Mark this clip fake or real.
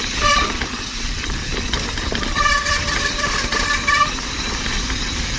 fake